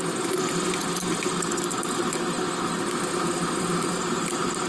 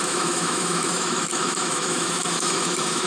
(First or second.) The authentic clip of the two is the first